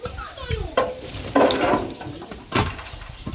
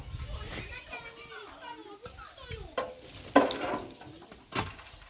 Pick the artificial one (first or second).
first